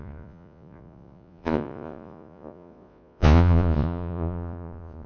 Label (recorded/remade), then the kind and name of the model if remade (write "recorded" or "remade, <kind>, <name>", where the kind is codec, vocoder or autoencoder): remade, vocoder, Vocos